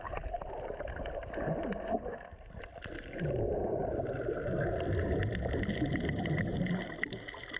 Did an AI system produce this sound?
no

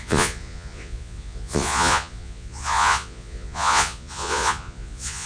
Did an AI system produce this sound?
yes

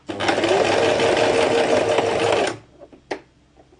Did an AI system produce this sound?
no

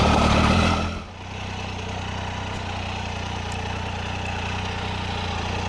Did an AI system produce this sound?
no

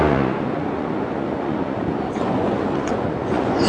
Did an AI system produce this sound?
yes